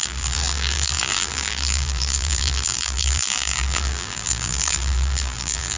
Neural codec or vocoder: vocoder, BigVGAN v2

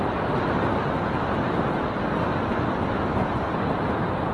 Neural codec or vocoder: none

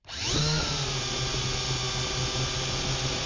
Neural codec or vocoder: none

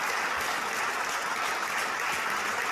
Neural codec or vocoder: none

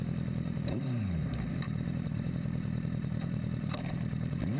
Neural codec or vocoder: vocoder, BigVGAN v2